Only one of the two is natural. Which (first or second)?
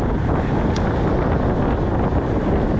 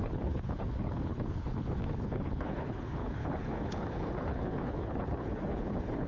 first